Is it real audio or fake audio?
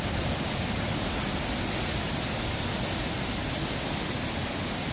real